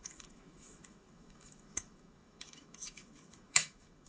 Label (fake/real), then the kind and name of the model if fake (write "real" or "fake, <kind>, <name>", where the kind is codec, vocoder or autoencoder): fake, autoencoder, DAC-VAE